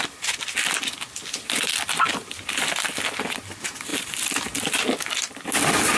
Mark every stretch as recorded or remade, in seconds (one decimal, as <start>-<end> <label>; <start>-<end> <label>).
0.0-6.0 recorded

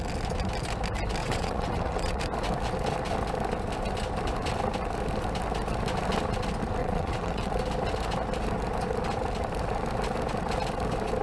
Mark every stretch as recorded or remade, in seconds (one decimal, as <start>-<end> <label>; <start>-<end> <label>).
0.0-1.2 recorded; 1.2-2.2 remade; 2.2-6.8 recorded; 6.8-7.5 remade; 7.5-11.2 recorded

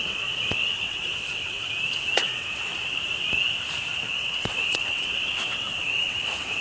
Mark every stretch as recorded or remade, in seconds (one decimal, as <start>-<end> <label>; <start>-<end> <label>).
0.0-1.6 remade; 1.6-2.2 recorded; 2.2-2.7 remade; 2.7-4.1 recorded; 4.1-6.6 remade

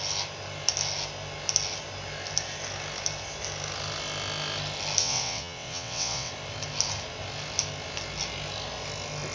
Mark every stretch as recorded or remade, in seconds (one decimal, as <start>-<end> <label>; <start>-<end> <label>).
0.0-5.0 recorded; 5.0-6.3 remade; 6.3-9.3 recorded

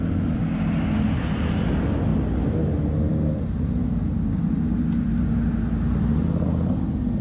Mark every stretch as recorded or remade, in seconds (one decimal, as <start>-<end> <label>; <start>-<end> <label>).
0.0-7.2 recorded

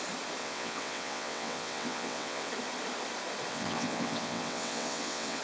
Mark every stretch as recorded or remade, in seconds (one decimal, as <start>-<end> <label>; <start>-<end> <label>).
0.0-0.4 recorded; 0.4-2.5 remade; 2.5-3.5 recorded; 3.5-5.4 remade